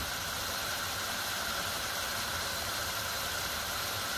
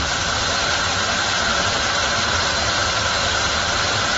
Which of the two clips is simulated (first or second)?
first